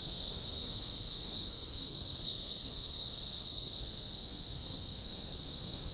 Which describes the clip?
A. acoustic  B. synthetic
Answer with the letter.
B